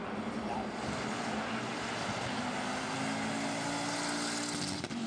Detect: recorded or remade recorded